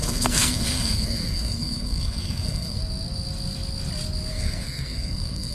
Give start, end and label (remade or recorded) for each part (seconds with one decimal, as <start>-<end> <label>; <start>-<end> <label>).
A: 0.0-2.8 remade; 2.8-4.3 recorded; 4.3-5.5 remade